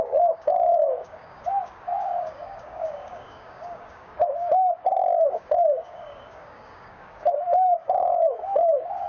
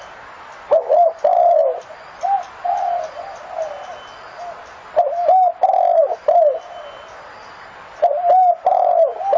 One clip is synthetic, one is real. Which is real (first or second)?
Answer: second